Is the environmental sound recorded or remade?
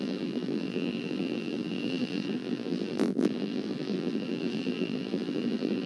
remade